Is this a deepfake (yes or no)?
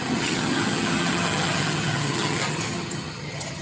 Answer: yes